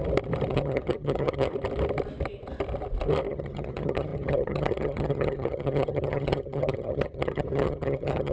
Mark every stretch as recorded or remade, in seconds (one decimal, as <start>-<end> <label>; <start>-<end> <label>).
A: 0.0-0.5 recorded; 0.5-1.5 remade; 1.5-3.3 recorded; 3.3-8.3 remade